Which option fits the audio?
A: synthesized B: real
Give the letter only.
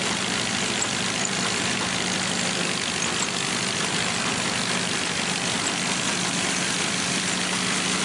B